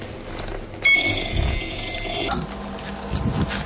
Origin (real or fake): real